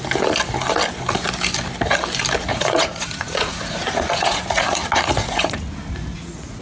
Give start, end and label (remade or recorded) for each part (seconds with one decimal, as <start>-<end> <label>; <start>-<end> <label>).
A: 0.0-2.5 recorded; 2.5-6.6 remade